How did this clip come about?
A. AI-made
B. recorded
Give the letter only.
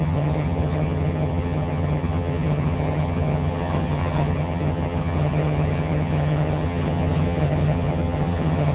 A